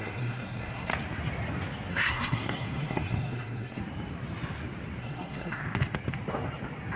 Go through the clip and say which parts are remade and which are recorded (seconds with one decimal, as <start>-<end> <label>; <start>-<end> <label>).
0.0-0.9 remade; 0.9-1.9 recorded; 1.9-3.8 remade; 3.8-5.0 recorded; 5.0-5.6 remade; 5.6-7.0 recorded